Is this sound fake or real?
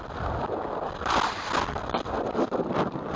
real